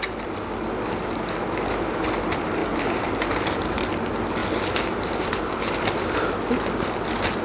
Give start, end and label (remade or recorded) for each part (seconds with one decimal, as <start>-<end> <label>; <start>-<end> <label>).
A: 0.0-2.6 recorded; 2.6-3.9 remade; 3.9-4.4 recorded; 4.4-6.3 remade; 6.3-7.4 recorded